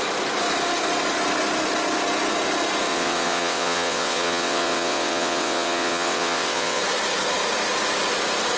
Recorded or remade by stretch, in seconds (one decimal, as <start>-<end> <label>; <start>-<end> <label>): 0.0-2.9 recorded; 2.9-6.8 remade; 6.8-8.6 recorded